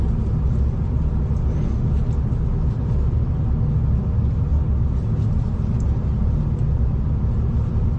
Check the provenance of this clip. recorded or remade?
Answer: recorded